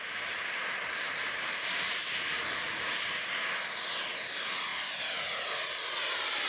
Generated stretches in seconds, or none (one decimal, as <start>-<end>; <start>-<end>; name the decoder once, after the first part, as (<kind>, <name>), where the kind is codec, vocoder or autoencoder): 0.6-3.3 (vocoder, BigVGAN v2)